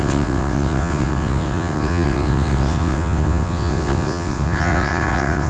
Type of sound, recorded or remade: remade